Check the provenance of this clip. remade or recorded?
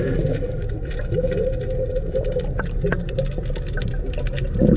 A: recorded